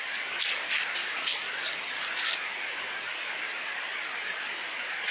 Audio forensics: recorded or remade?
recorded